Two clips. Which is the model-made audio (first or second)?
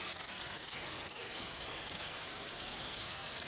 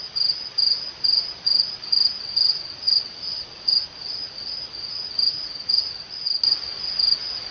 first